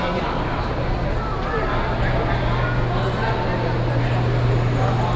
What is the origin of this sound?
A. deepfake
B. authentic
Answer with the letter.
B